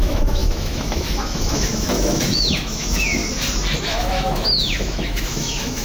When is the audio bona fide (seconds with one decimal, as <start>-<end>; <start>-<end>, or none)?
3.2-3.8